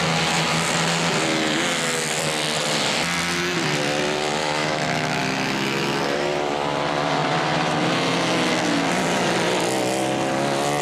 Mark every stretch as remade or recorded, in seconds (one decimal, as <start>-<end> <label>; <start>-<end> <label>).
0.0-4.4 recorded; 4.4-5.2 remade; 5.2-10.8 recorded